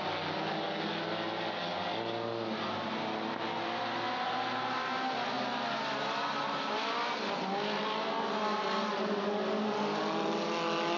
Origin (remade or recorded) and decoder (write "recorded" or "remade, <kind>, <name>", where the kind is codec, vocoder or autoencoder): recorded